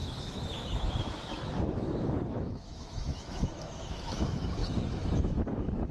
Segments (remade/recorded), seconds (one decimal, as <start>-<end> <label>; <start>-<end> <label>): 0.0-5.9 remade